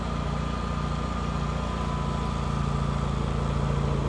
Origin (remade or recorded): recorded